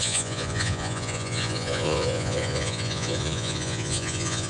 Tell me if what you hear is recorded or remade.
remade